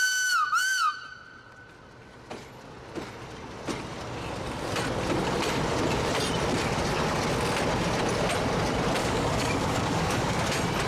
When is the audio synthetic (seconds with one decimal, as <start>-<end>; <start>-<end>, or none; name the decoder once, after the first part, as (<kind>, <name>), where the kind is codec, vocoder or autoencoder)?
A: 9.0-10.5 (codec, DAC)